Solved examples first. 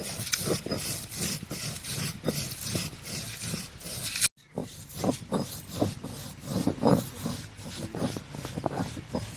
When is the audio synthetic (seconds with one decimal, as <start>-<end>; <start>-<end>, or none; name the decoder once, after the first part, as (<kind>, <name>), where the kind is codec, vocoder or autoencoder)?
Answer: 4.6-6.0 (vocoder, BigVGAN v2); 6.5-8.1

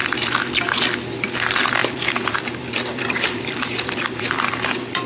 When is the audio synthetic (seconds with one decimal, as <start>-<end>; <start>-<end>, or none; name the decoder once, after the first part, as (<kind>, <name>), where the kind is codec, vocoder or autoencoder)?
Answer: 1.8-5.1 (vocoder, BigVGAN v2)

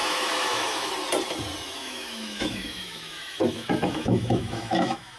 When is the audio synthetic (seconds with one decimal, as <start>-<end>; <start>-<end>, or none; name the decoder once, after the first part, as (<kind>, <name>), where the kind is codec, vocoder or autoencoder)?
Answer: 0.0-0.9 (autoencoder, DAC-VAE); 1.8-5.2

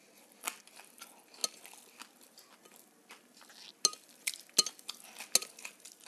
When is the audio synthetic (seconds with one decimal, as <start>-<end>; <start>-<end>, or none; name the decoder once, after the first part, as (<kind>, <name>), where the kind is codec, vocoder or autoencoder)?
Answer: none

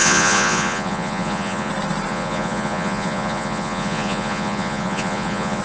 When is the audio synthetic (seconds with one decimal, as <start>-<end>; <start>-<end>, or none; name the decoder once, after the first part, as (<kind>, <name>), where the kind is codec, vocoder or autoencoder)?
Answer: 0.0-1.7 (vocoder, Vocos); 2.1-5.6

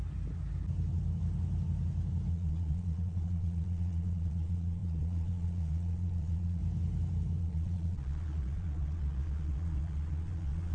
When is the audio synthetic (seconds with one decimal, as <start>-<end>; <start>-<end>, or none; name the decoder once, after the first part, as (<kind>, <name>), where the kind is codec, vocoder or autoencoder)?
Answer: 2.3-6.6 (vocoder, Vocos); 7.4-10.7

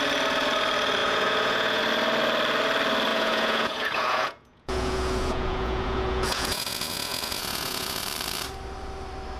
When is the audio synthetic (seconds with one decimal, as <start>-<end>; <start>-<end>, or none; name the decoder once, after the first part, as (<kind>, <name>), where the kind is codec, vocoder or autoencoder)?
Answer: 1.0-1.8 (vocoder, Vocos); 3.1-8.0